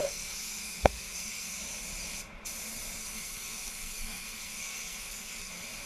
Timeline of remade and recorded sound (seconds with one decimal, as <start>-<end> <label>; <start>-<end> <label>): 0.0-1.6 remade; 1.6-3.0 recorded; 3.0-5.5 remade; 5.5-5.9 recorded